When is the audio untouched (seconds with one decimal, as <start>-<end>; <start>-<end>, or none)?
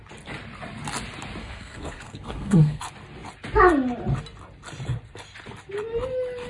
0.0-1.4; 2.8-6.5